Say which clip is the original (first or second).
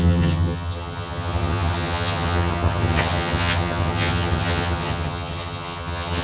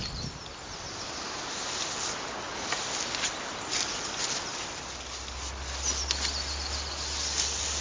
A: second